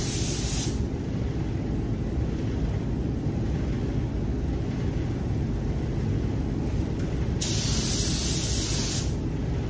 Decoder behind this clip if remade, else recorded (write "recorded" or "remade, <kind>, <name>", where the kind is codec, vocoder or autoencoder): recorded